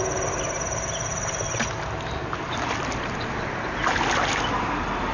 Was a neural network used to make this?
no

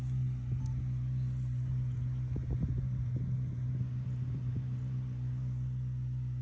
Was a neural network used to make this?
no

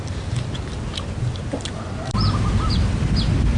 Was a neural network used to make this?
no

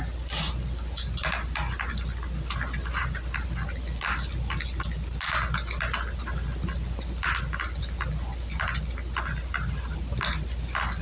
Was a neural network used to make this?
no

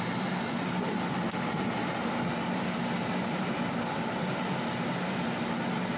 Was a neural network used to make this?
no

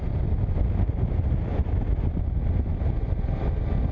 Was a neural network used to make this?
no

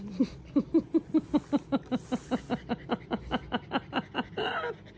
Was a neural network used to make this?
no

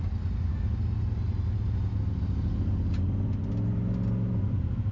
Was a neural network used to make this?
no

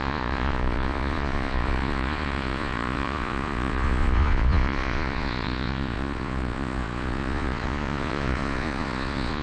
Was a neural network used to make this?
yes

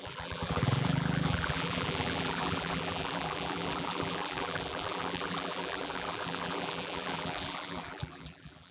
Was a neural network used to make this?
yes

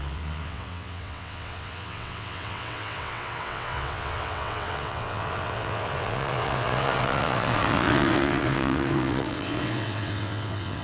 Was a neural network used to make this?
yes